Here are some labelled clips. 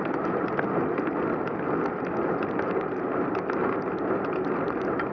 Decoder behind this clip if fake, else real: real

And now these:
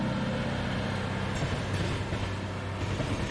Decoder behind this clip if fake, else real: real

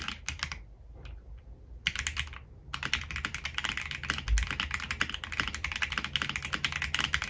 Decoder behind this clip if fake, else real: real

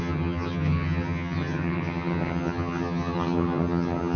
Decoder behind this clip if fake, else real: fake, vocoder, HiFi-GAN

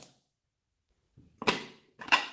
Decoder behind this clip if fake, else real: real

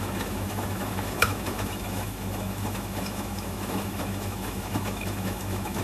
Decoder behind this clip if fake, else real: fake, autoencoder, DAC-VAE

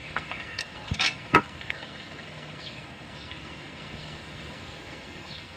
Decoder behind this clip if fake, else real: fake, codec, SNAC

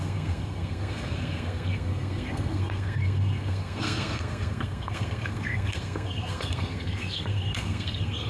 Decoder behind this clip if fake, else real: fake, codec, SNAC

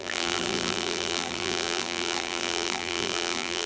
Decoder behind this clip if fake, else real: fake, vocoder, BigVGAN v2